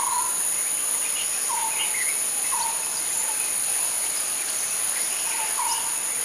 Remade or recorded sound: recorded